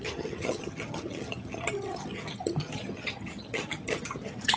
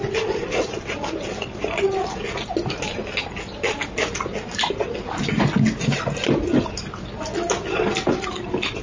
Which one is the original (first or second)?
second